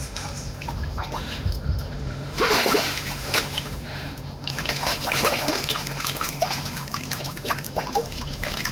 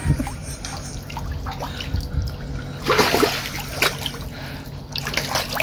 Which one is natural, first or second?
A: second